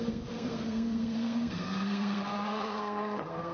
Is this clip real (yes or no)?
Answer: no